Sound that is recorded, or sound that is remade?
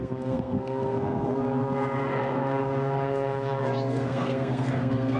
remade